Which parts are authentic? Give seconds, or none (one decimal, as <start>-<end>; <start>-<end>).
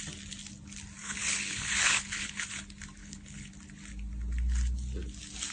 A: 0.0-1.0; 2.6-3.0; 3.5-5.5